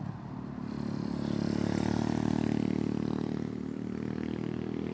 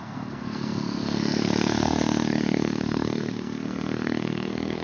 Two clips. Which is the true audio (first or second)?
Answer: first